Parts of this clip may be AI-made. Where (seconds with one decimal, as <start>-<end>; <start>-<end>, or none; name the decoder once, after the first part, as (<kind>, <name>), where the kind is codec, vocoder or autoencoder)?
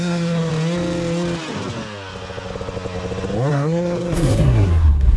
0.0-0.5 (codec, SNAC); 3.5-5.2